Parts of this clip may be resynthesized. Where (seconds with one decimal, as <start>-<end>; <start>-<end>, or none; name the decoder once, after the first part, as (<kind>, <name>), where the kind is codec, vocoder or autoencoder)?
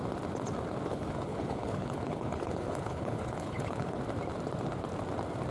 0.9-4.0 (codec, HILCodec)